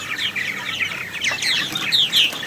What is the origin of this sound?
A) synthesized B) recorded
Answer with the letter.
B